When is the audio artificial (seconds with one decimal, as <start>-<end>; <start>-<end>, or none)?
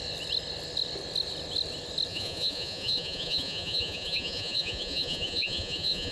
2.1-6.1